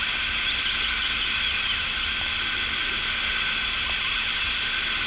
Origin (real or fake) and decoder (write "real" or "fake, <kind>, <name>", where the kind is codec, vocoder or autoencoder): real